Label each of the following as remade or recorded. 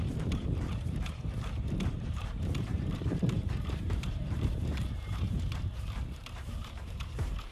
remade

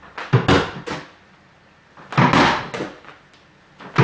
recorded